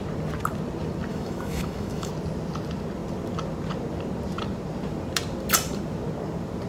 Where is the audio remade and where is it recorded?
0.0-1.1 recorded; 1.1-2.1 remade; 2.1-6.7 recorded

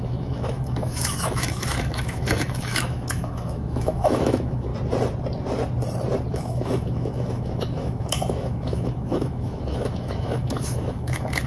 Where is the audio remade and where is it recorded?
0.0-4.7 remade; 4.7-6.3 recorded; 6.3-11.5 remade

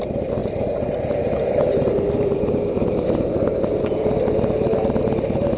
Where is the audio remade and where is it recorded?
0.0-5.6 recorded

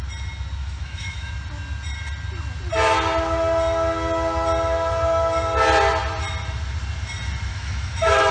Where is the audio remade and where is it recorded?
0.0-0.6 recorded; 0.6-1.3 remade; 1.3-7.5 recorded; 7.5-8.3 remade